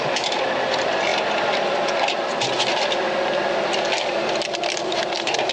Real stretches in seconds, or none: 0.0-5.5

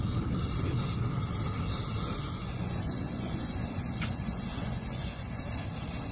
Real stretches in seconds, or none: 0.0-2.2; 5.4-6.1